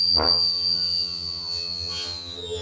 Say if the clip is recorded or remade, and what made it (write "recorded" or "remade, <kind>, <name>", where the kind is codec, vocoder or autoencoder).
remade, vocoder, HiFi-GAN